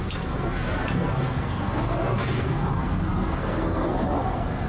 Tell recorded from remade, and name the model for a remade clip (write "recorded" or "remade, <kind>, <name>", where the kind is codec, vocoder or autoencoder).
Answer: remade, codec, SNAC